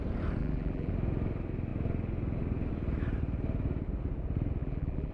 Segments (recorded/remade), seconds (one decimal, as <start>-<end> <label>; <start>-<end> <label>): 0.0-0.4 recorded; 0.4-0.9 remade; 0.9-4.6 recorded; 4.6-5.1 remade